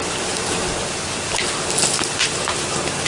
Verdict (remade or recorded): recorded